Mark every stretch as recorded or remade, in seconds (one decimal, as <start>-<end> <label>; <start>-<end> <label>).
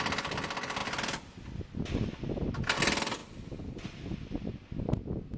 0.0-5.4 recorded